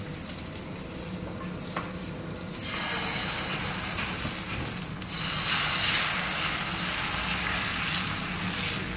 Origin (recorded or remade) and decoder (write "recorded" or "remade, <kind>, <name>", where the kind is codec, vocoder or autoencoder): recorded